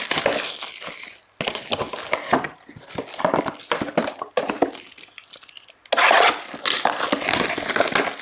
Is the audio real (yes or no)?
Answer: yes